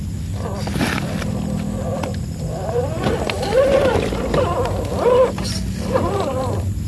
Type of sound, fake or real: real